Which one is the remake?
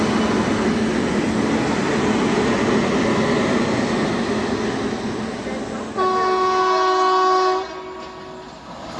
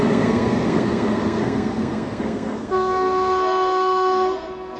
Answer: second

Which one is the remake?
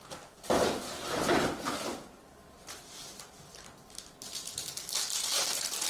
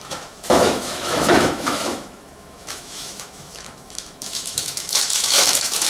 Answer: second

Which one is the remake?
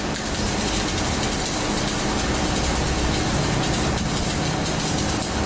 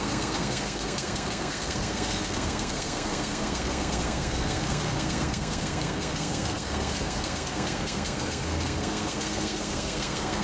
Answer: second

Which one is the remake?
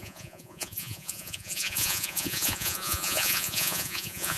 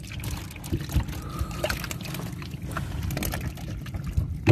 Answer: first